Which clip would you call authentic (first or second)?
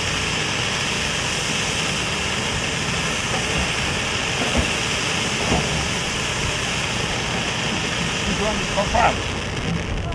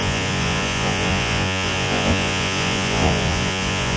first